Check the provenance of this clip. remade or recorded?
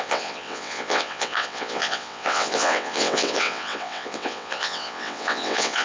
remade